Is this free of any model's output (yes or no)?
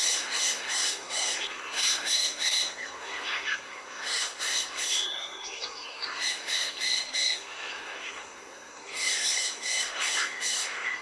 no